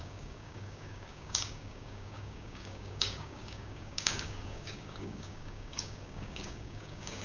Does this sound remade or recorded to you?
remade